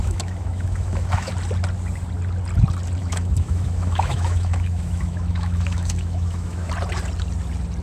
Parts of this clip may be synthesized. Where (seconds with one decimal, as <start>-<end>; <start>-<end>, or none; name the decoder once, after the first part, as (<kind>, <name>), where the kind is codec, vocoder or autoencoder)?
0.0-1.3 (autoencoder, DAC-VAE); 3.0-6.7